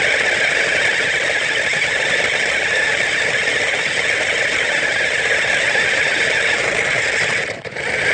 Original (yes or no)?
yes